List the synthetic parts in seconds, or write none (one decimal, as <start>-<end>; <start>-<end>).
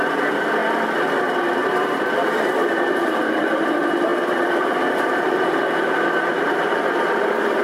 0.0-0.6; 2.4-7.6